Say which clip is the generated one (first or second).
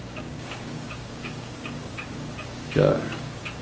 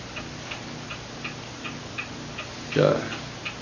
first